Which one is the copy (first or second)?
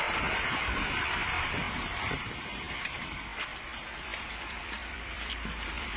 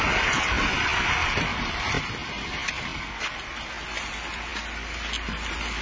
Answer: first